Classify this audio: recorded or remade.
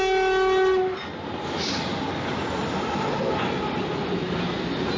recorded